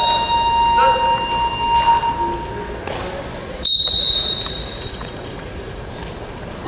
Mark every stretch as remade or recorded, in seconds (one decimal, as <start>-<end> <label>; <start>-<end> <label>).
0.0-3.4 recorded; 3.4-5.8 remade; 5.8-6.7 recorded